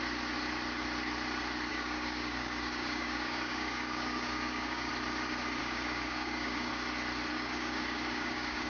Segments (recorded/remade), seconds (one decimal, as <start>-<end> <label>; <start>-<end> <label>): 0.0-1.7 recorded; 1.7-4.9 remade; 4.9-5.6 recorded; 5.6-6.7 remade; 6.7-7.3 recorded; 7.3-8.7 remade